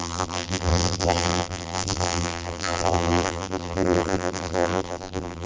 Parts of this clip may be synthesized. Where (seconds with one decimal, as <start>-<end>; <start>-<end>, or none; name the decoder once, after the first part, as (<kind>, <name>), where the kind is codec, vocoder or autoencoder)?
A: 0.0-5.5 (vocoder, BigVGAN v2)